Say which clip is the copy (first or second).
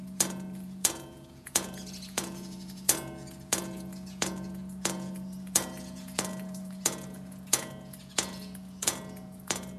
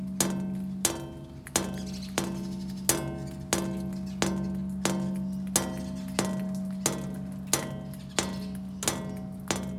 first